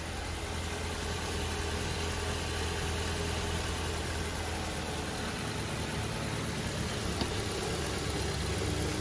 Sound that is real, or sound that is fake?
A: real